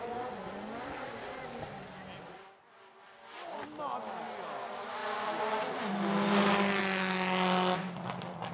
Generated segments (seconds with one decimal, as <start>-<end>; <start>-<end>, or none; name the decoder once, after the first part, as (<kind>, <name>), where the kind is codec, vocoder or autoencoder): none